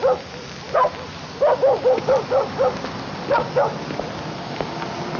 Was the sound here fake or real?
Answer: real